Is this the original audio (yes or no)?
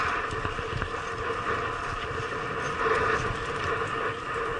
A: yes